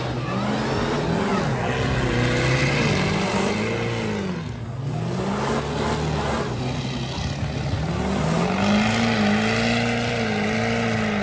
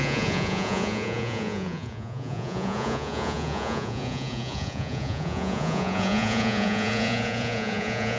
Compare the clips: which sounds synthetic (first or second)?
second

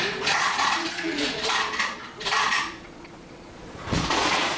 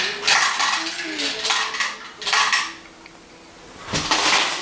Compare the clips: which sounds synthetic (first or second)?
first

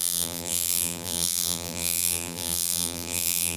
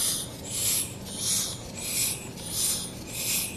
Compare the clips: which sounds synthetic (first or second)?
first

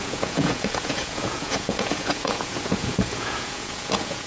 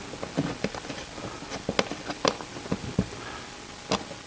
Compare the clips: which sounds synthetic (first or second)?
first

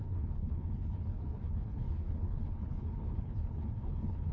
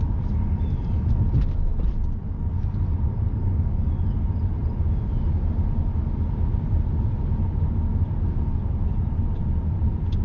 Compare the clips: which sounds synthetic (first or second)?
first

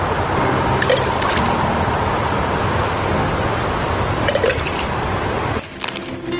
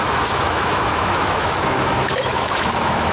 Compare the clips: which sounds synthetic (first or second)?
second